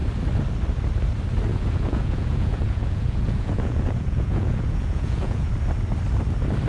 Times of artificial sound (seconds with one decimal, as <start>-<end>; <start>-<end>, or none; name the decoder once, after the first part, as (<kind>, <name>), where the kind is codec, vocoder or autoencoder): 1.5-5.5 (vocoder, Vocos)